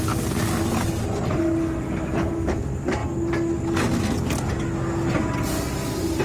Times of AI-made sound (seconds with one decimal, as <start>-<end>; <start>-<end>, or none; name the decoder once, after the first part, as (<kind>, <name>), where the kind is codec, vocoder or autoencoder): none